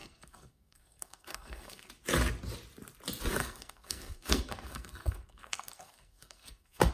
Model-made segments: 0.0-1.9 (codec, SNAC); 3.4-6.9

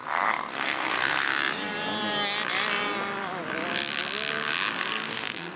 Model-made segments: 0.0-1.3 (codec, SNAC); 4.8-5.6

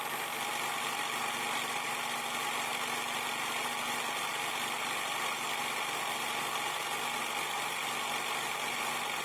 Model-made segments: none

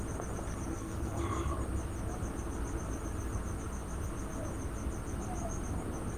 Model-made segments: 0.7-1.5 (codec, SNAC)